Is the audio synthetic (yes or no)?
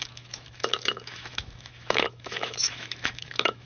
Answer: yes